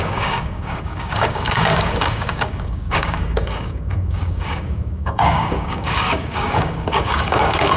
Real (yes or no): no